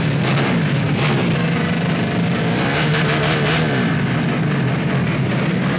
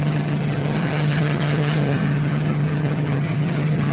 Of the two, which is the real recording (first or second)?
first